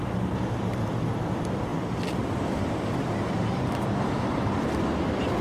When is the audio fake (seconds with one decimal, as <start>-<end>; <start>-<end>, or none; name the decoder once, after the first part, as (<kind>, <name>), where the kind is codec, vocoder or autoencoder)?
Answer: 0.0-5.4 (vocoder, BigVGAN v2)